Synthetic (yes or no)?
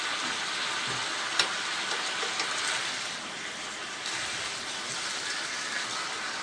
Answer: no